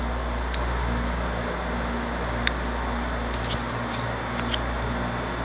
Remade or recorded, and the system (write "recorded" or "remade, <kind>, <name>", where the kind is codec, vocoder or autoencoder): recorded